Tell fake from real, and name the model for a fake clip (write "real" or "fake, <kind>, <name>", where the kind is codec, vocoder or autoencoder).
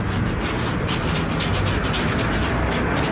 real